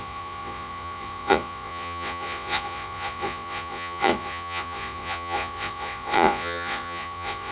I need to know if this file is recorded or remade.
remade